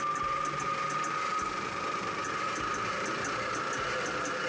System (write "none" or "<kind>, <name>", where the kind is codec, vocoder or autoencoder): none